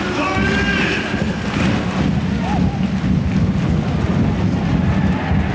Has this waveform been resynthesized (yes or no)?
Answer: no